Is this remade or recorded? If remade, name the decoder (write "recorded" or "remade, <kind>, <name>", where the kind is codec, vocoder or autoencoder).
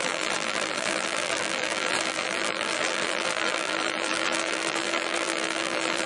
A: remade, vocoder, BigVGAN v2